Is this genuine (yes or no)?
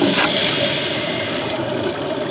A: yes